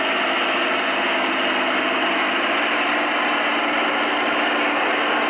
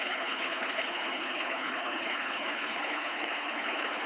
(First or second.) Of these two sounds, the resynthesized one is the second